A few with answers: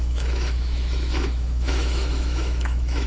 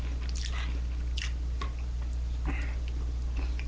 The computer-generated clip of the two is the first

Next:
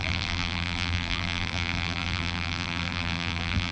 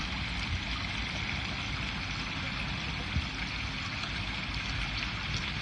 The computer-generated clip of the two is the first